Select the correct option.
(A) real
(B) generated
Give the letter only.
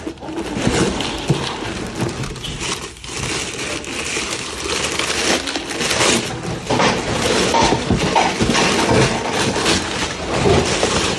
A